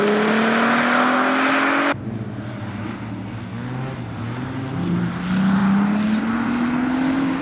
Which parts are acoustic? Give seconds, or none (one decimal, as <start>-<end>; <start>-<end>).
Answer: 0.0-7.4